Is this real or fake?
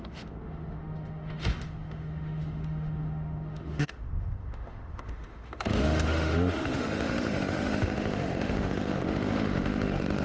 fake